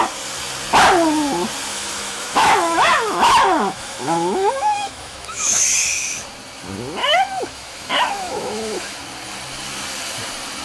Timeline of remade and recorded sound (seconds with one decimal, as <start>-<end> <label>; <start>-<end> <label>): 0.0-1.7 recorded; 1.7-5.6 remade; 5.6-7.0 recorded; 7.0-9.0 remade; 9.0-10.6 recorded